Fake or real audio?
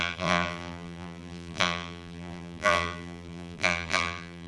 fake